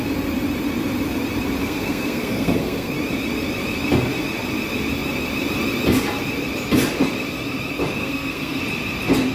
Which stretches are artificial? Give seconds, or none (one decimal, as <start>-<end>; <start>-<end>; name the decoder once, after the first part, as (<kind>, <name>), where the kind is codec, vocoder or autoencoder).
1.6-2.9 (codec, SNAC); 8.0-8.6